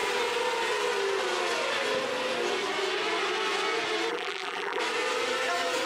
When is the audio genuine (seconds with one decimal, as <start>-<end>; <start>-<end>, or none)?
0.0-4.1; 4.8-5.9